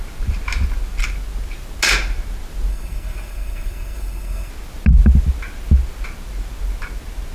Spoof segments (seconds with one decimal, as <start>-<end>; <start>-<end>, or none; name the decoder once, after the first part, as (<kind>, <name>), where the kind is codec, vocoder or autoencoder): 2.7-4.5 (codec, SNAC)